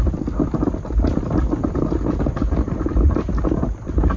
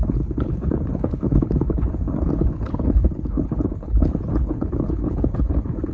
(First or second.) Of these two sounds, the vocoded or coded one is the second